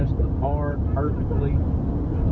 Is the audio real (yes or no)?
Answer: yes